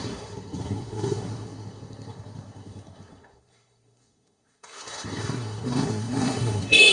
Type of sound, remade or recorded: remade